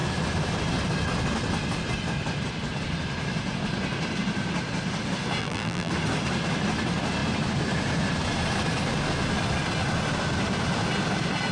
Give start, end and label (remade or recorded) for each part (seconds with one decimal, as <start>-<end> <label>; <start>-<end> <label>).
0.0-5.4 recorded; 5.4-5.9 remade; 5.9-11.5 recorded

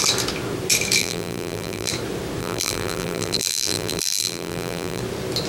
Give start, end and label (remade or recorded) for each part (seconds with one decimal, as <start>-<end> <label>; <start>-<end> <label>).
0.0-1.0 recorded; 1.0-1.9 remade; 1.9-2.4 recorded; 2.4-5.0 remade; 5.0-5.5 recorded

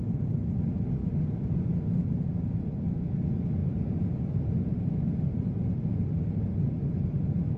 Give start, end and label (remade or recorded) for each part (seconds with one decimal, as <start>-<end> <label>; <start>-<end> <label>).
0.0-3.6 recorded; 3.6-4.2 remade; 4.2-5.3 recorded; 5.3-5.8 remade; 5.8-7.6 recorded

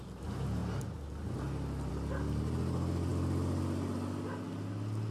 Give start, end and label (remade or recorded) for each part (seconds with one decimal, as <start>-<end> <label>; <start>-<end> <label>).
0.0-5.1 recorded